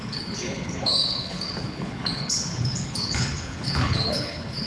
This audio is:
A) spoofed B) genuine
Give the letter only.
A